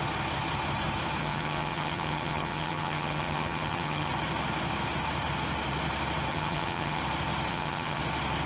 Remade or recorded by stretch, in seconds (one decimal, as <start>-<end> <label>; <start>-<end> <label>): 0.0-1.2 recorded; 1.2-4.1 remade; 4.1-6.3 recorded; 6.3-7.0 remade; 7.0-7.5 recorded; 7.5-8.0 remade; 8.0-8.5 recorded

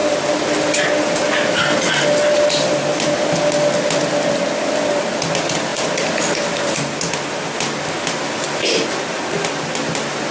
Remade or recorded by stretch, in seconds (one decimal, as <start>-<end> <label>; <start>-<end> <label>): 0.0-10.3 recorded

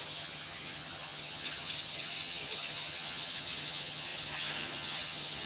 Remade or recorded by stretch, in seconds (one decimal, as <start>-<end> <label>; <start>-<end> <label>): 0.0-5.5 remade

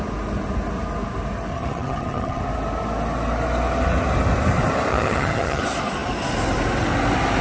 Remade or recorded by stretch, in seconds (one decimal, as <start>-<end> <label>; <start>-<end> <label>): 0.0-1.5 recorded; 1.5-2.4 remade; 2.4-4.9 recorded; 4.9-5.6 remade; 5.6-7.4 recorded

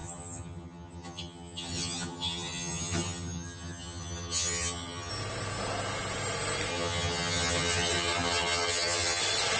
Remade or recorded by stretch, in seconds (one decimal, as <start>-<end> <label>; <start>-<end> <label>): 0.0-5.1 remade; 5.1-6.7 recorded; 6.7-9.2 remade; 9.2-9.6 recorded

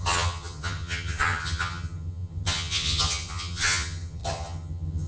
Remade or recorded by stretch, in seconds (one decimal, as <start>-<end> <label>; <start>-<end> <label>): 0.0-5.1 remade